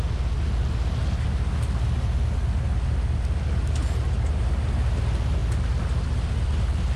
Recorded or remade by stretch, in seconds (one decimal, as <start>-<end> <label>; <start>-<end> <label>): 0.0-7.0 recorded